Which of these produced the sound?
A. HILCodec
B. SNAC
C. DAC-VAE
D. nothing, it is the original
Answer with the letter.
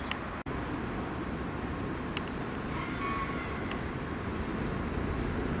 D